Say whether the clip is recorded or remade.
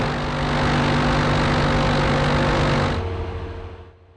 recorded